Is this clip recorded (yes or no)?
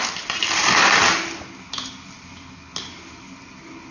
yes